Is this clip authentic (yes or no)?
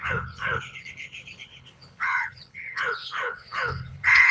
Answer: no